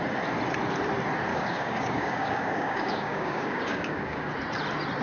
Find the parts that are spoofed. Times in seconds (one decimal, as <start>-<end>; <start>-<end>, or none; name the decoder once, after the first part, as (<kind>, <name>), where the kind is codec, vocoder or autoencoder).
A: 1.3-4.3 (codec, DAC)